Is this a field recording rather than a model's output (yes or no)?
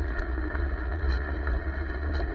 no